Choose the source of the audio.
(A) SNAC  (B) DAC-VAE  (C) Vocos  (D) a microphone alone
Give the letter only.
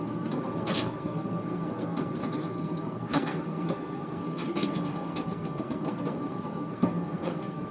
A